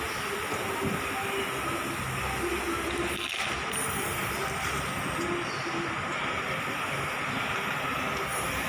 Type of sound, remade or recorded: recorded